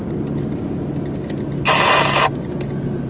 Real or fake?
real